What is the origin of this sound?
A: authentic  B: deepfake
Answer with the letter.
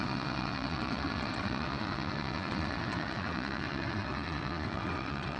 B